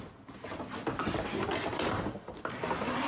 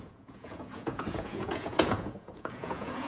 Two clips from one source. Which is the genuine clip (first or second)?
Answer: first